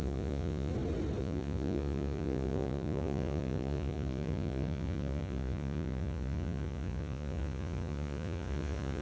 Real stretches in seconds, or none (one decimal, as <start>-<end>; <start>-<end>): 0.7-1.2